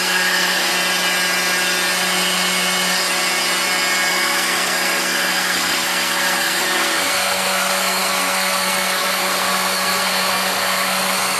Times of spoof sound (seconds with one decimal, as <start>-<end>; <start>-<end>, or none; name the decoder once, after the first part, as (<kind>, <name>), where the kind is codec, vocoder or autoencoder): 0.0-0.7 (codec, SNAC); 4.1-11.4